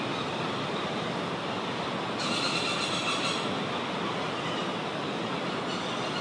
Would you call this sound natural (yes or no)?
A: yes